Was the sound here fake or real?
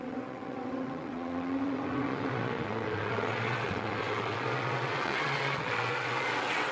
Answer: fake